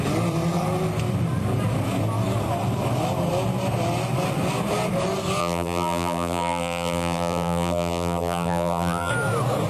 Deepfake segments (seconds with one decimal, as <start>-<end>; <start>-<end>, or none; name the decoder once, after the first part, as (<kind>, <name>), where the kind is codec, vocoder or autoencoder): 5.4-9.1 (vocoder, BigVGAN v2)